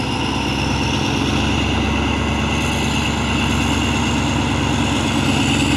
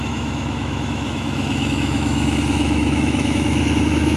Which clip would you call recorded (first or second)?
first